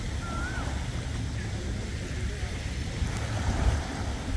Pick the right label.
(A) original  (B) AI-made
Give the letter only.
A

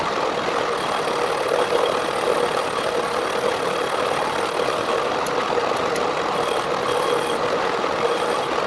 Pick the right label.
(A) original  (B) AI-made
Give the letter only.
A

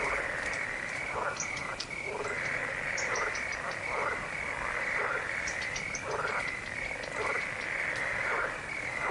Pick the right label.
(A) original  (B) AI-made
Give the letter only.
A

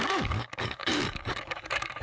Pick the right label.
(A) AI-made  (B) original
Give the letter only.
A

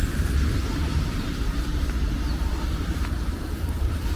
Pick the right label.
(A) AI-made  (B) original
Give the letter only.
A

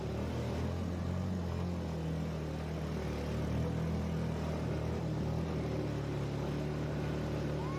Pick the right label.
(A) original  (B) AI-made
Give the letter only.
A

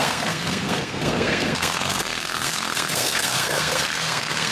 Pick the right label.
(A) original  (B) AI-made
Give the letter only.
B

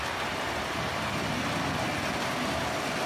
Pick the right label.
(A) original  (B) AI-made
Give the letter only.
A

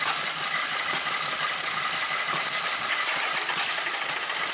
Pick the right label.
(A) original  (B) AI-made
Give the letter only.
B